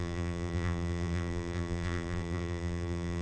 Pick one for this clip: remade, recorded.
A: remade